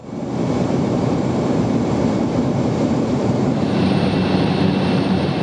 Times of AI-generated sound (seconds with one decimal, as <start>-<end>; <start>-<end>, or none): 0.5-5.4